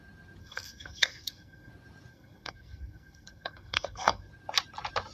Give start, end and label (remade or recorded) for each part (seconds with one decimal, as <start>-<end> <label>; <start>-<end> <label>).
0.0-0.4 recorded; 0.4-1.7 remade; 1.7-2.1 recorded; 2.1-4.3 remade; 4.3-5.1 recorded